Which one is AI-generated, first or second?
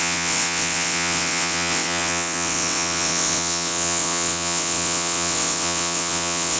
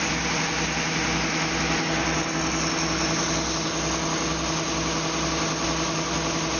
first